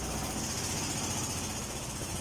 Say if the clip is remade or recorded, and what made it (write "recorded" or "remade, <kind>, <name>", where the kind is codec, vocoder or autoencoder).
recorded